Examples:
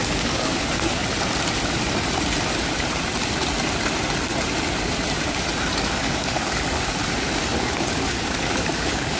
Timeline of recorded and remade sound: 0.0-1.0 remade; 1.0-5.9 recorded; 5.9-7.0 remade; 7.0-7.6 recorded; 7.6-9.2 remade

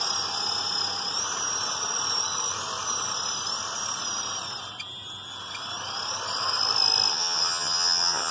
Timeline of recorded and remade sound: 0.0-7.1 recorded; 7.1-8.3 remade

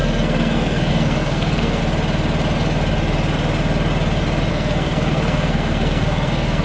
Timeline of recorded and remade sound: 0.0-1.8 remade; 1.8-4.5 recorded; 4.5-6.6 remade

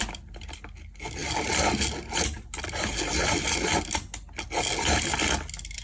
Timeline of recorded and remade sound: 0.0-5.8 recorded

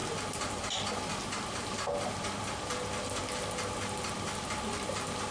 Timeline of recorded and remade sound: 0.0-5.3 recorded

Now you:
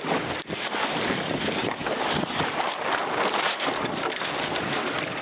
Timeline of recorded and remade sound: 0.0-5.2 remade

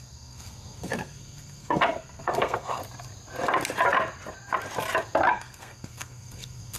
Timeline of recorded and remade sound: 0.0-2.8 remade; 2.8-5.3 recorded; 5.3-6.8 remade

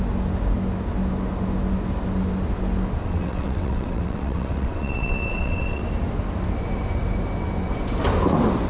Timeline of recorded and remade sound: 0.0-3.0 recorded; 3.0-5.8 remade; 5.8-8.7 recorded